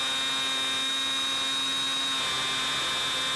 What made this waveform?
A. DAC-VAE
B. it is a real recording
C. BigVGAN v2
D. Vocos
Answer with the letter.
B